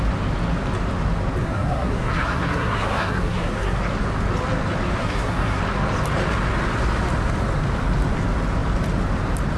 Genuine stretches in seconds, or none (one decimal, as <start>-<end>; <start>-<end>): 0.0-1.4; 3.8-5.0; 5.6-9.6